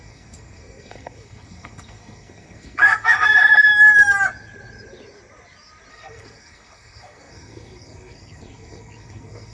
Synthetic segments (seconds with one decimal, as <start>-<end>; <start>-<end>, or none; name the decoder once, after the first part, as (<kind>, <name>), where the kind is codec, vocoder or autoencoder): 0.0-3.7 (codec, SNAC); 5.9-9.5

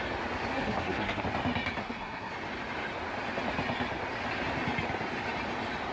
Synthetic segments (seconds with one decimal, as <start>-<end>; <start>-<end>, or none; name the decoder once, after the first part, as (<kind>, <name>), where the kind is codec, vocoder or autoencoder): 0.5-1.2 (codec, SNAC); 1.8-2.3

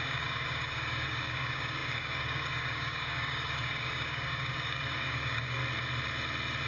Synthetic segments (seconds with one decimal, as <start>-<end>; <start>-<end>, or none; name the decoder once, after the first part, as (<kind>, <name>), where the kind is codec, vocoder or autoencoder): 0.0-5.6 (codec, DAC)

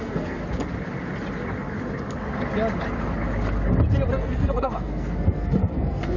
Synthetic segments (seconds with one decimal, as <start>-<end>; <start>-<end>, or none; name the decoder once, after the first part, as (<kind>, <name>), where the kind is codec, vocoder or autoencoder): 0.0-0.4 (codec, SNAC); 4.1-6.2

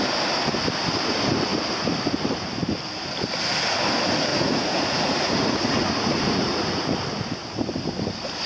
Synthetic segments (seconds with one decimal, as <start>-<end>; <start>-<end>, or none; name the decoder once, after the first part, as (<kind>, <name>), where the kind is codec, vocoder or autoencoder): 4.3-7.0 (vocoder, Vocos)

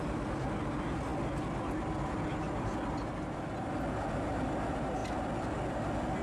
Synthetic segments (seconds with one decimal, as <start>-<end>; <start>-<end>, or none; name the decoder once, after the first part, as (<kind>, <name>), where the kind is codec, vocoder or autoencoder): none